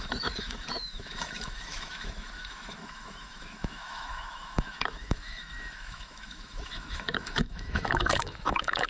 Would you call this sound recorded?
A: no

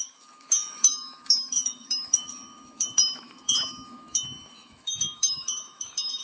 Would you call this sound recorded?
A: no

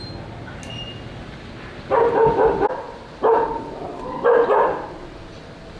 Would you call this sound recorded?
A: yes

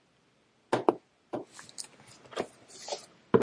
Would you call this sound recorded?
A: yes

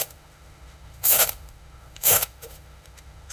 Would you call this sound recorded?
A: no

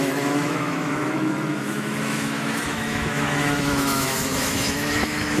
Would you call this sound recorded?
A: no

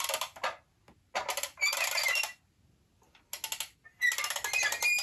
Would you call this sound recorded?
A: yes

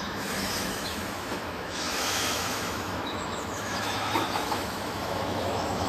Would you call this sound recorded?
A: no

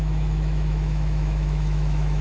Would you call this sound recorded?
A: no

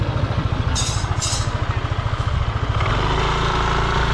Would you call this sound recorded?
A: yes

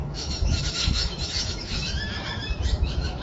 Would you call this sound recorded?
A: no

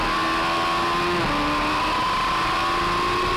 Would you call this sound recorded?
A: yes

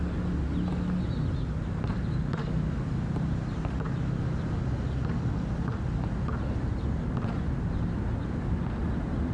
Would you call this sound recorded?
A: yes